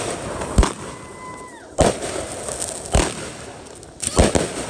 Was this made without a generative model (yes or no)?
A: yes